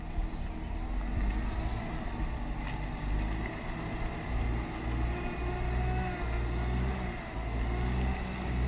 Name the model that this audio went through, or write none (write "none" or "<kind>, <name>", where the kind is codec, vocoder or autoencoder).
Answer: none